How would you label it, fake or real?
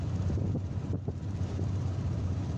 fake